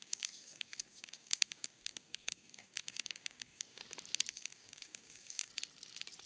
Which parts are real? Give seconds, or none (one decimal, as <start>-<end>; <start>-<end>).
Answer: 3.8-4.3; 5.5-6.3